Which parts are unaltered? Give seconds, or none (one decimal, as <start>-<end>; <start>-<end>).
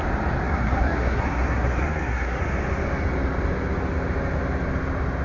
0.0-0.4; 2.4-5.2